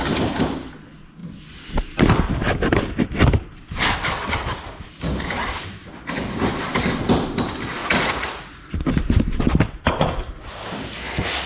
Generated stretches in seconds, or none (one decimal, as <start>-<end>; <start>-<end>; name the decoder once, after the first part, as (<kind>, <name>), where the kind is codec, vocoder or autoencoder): 7.8-8.7 (vocoder, Vocos)